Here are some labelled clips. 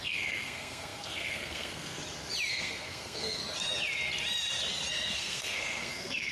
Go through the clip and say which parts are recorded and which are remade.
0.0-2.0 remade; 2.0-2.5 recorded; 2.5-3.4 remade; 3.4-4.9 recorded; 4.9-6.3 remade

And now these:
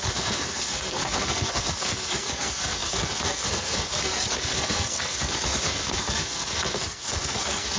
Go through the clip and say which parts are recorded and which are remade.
0.0-7.8 remade

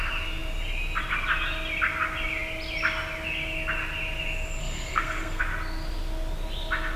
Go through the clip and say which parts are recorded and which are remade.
0.0-4.6 recorded; 4.6-5.4 remade; 5.4-7.0 recorded

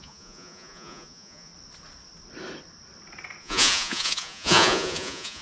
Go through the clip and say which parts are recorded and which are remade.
0.0-1.5 remade; 1.5-3.4 recorded; 3.4-5.4 remade

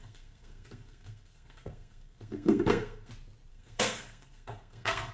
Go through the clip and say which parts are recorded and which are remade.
0.0-3.1 remade; 3.1-3.5 recorded; 3.5-5.1 remade

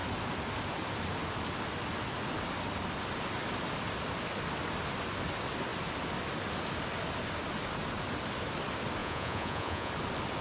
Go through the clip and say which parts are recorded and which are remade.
0.0-9.0 recorded; 9.0-9.9 remade; 9.9-10.4 recorded

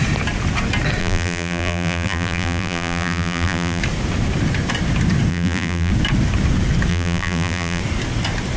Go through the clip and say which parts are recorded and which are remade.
0.0-1.0 recorded; 1.0-3.8 remade; 3.8-5.3 recorded; 5.3-5.9 remade; 5.9-6.9 recorded; 6.9-7.8 remade; 7.8-8.6 recorded

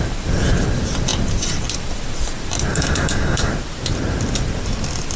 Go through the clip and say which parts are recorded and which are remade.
0.0-2.7 recorded; 2.7-3.5 remade; 3.5-5.2 recorded